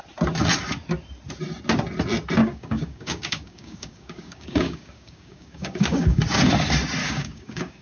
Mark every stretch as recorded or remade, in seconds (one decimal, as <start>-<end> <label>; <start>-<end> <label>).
0.0-2.4 recorded; 2.4-6.2 remade; 6.2-7.0 recorded; 7.0-7.8 remade